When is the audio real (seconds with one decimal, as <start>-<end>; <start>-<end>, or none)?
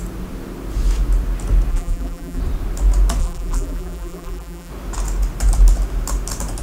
0.0-1.7; 2.4-3.2; 4.7-6.6